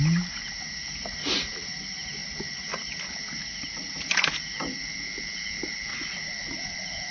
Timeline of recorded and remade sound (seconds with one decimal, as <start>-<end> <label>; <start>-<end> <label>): 0.0-1.2 recorded; 1.2-1.8 remade; 1.8-5.9 recorded; 5.9-7.1 remade